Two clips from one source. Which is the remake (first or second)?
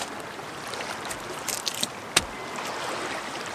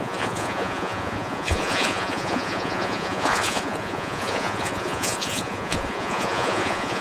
second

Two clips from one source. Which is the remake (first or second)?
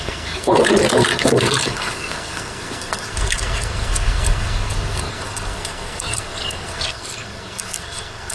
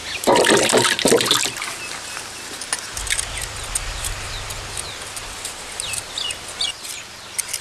first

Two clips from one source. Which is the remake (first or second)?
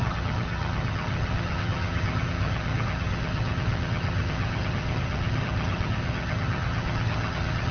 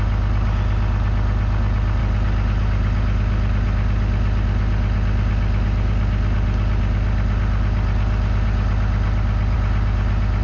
first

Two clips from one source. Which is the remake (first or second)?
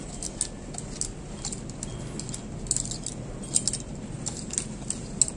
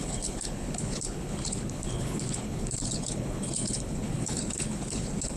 second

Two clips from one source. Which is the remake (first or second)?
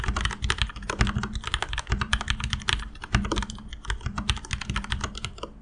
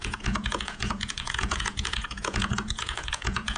second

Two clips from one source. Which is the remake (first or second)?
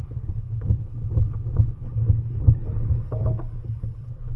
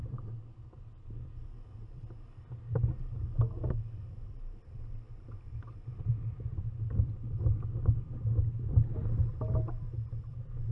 first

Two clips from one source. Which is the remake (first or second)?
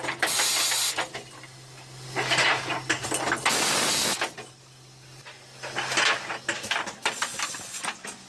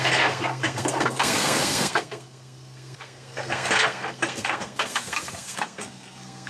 second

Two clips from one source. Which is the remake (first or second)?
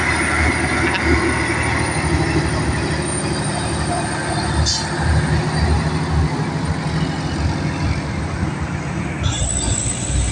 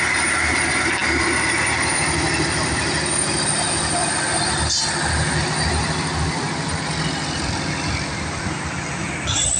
second